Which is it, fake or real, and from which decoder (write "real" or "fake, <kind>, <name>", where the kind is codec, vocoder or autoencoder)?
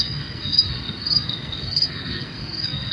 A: fake, codec, SNAC